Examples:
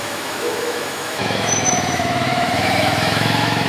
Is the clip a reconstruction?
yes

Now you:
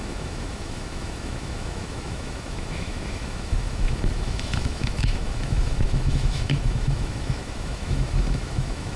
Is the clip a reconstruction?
yes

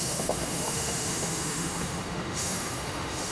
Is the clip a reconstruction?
yes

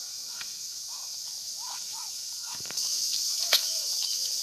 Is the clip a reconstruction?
yes